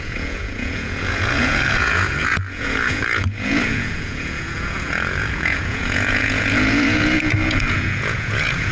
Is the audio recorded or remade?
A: remade